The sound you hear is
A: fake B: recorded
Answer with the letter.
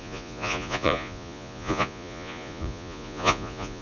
A